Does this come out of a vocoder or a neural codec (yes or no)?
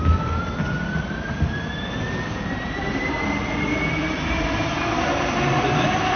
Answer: yes